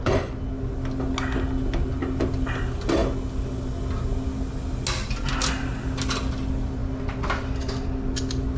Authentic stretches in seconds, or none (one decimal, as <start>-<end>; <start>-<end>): 0.0-8.6